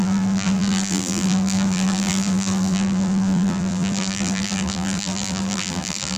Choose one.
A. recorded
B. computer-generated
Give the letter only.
B